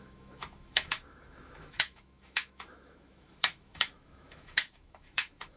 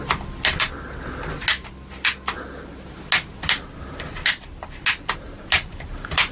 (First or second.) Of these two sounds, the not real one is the first